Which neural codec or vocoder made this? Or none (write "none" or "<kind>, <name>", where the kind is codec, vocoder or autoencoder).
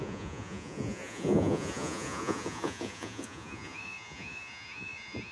vocoder, Vocos